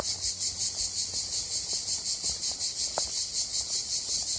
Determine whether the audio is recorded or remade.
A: recorded